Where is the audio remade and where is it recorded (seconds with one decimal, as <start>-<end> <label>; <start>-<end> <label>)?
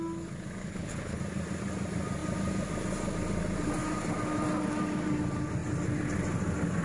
0.0-0.6 recorded; 0.6-1.2 remade; 1.2-6.8 recorded